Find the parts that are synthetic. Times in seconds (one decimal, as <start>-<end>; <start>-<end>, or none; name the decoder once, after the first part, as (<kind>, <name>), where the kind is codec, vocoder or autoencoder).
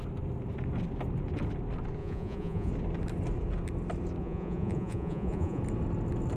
2.0-2.7 (vocoder, Vocos); 4.2-5.6